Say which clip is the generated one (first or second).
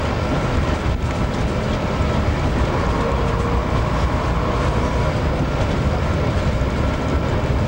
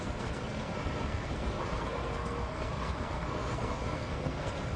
second